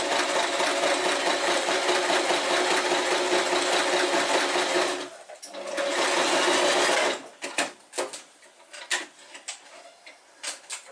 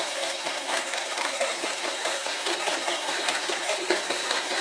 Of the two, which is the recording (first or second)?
first